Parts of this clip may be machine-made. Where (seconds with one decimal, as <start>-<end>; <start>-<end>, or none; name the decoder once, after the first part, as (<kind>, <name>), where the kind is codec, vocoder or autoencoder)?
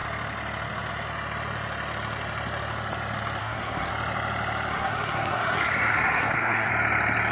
3.4-3.9 (codec, SNAC); 4.7-6.7